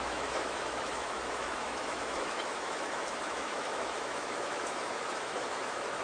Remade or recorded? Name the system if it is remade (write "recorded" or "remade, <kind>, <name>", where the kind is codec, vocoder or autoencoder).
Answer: remade, autoencoder, DAC-VAE